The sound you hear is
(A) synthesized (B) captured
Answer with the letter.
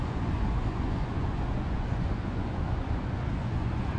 A